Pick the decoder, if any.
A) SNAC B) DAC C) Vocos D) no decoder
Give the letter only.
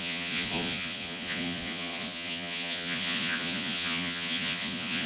C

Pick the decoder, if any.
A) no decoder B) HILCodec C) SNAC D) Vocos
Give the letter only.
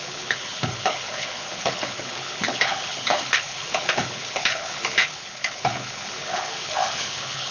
B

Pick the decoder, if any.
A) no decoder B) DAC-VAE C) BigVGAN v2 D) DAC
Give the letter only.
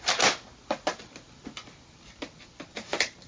A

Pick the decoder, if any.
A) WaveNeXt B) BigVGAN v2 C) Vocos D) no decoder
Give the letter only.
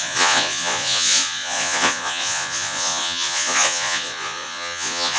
C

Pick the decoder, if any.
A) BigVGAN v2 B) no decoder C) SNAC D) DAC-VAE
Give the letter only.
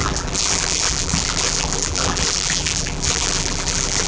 A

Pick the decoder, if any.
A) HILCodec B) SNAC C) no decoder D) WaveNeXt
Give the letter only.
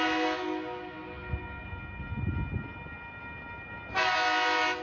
C